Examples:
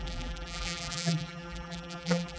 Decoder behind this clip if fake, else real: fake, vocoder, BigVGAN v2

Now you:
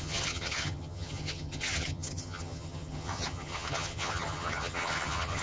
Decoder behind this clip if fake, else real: fake, vocoder, HiFi-GAN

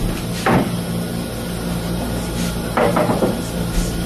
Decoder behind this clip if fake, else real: real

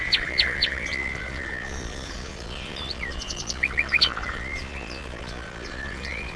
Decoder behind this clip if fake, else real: fake, vocoder, Vocos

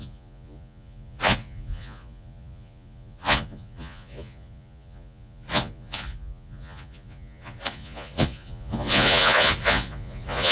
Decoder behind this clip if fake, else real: fake, vocoder, Vocos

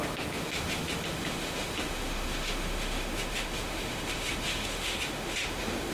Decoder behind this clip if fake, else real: fake, autoencoder, DAC-VAE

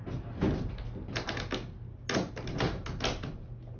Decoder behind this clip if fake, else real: real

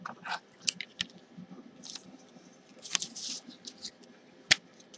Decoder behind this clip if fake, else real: real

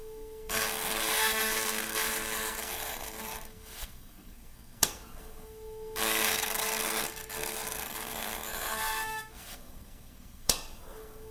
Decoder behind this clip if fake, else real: fake, codec, SNAC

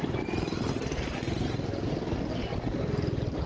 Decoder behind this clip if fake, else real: real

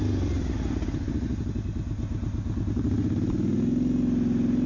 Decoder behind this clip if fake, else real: real